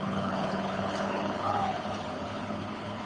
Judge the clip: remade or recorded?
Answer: remade